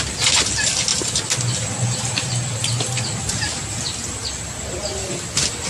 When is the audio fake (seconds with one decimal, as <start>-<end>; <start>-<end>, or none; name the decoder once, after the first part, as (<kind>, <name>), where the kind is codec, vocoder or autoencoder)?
none